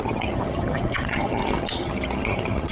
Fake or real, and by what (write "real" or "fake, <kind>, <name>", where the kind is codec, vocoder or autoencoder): fake, vocoder, HiFi-GAN